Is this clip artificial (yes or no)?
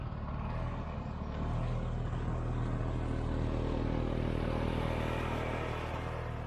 no